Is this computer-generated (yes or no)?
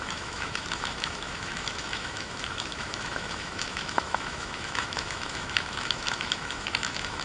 yes